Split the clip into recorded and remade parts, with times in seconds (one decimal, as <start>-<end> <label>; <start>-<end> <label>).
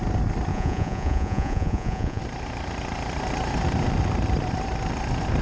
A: 0.0-0.5 recorded; 0.5-2.2 remade; 2.2-5.4 recorded